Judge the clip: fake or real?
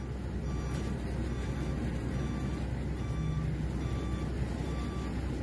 real